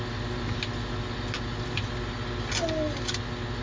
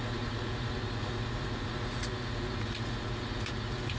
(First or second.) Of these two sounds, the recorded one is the first